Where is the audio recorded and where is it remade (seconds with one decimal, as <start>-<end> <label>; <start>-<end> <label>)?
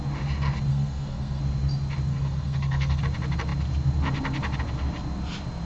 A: 0.0-0.7 recorded; 0.7-1.4 remade; 1.4-2.1 recorded; 2.1-3.0 remade; 3.0-5.7 recorded